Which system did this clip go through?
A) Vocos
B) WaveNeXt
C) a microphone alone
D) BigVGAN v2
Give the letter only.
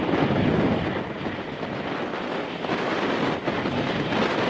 C